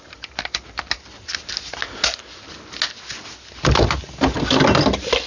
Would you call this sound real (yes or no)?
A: yes